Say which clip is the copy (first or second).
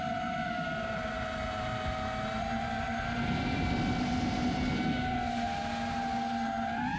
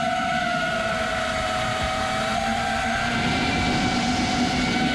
second